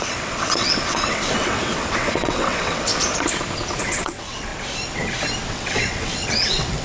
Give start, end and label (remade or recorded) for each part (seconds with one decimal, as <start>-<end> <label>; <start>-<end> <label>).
0.0-2.9 remade; 2.9-3.8 recorded; 3.8-4.5 remade; 4.5-5.5 recorded; 5.5-6.8 remade